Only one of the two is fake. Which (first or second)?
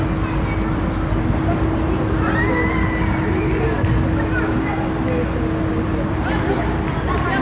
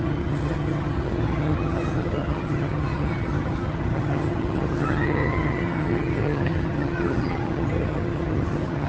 second